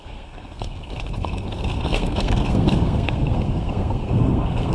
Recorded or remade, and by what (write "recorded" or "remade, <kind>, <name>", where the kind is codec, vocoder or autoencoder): remade, codec, SNAC